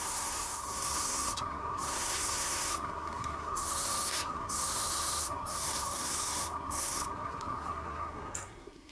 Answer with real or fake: fake